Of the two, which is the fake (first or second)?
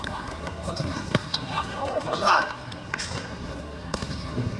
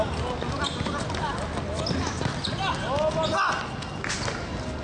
first